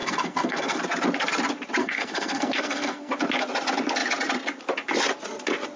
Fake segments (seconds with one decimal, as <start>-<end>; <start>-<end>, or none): 0.0-0.8; 1.8-3.1

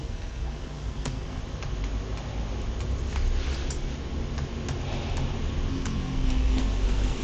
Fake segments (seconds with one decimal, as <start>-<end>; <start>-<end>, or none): 0.0-1.4; 5.7-7.2

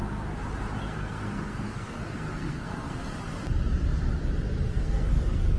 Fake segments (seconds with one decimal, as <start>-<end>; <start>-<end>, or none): 0.8-3.0; 4.7-5.6